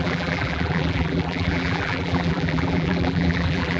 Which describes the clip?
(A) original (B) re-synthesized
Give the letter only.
B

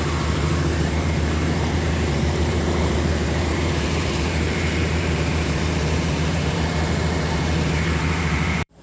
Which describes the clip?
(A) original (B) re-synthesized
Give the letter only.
B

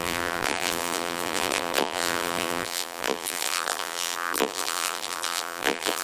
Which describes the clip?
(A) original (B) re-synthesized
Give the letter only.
B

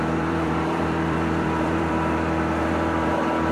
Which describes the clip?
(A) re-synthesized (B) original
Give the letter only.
A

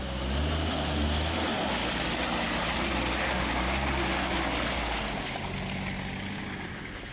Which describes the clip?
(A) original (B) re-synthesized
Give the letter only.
A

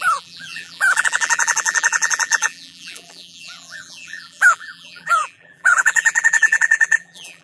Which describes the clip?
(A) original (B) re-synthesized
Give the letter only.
B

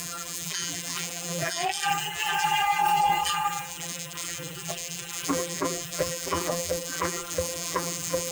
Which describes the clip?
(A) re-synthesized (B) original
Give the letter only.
A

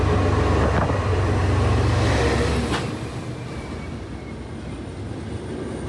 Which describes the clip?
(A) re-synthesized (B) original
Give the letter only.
B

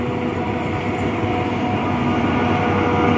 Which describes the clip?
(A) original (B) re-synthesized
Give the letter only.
A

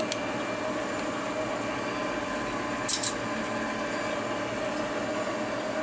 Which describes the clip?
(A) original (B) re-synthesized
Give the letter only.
A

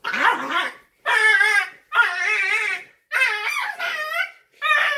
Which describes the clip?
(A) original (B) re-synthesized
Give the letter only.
A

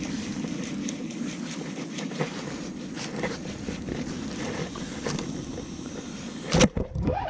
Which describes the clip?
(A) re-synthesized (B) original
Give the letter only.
A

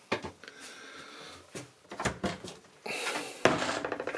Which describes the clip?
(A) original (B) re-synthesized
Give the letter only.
A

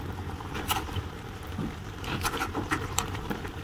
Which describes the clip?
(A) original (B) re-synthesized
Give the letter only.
B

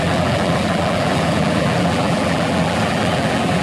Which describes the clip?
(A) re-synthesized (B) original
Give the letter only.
A